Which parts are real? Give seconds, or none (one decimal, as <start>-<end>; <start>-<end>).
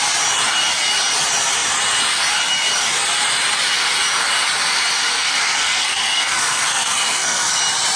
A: 0.0-5.1; 7.6-8.0